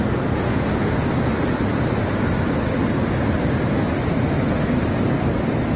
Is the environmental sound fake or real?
real